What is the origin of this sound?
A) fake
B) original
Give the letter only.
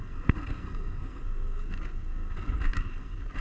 A